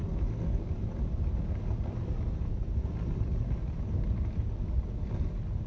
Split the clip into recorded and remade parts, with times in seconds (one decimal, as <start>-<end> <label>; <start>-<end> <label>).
0.0-5.7 recorded